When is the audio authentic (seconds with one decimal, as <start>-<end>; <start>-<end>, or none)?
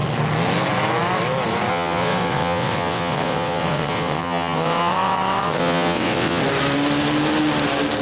0.0-1.7; 6.4-8.0